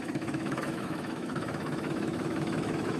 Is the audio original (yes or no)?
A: no